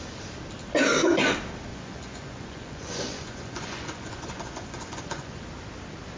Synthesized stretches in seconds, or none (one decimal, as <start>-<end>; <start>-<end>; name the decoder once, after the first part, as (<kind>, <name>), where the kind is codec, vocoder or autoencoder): 1.7-5.4 (vocoder, Vocos)